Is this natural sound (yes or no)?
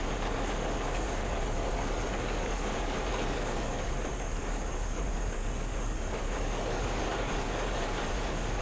no